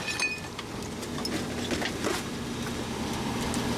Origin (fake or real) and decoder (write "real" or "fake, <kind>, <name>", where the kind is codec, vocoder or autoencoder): real